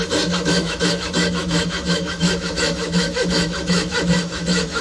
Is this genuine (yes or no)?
no